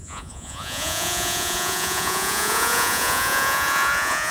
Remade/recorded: remade